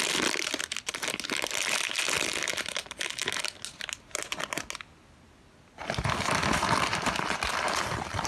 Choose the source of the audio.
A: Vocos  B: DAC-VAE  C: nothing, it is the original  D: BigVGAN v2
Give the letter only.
C